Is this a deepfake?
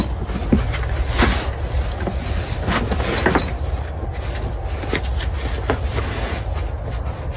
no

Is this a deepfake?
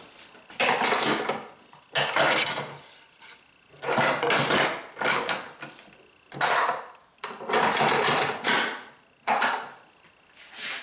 no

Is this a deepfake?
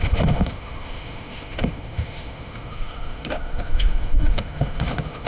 yes